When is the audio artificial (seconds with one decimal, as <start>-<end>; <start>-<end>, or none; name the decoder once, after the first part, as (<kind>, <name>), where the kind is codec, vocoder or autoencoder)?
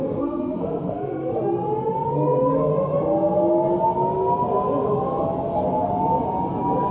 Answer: 0.0-1.3 (codec, SNAC); 2.1-2.7